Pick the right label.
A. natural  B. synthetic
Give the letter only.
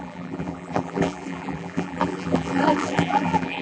B